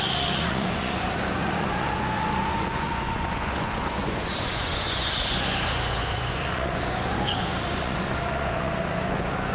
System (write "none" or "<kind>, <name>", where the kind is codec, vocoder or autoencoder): vocoder, Vocos